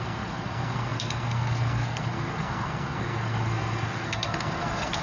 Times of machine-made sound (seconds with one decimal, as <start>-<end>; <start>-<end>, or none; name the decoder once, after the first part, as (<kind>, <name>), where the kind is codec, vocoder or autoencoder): 0.0-5.0 (codec, SNAC)